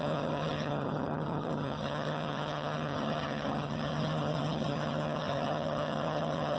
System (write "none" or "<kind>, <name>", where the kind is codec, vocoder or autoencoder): vocoder, HiFi-GAN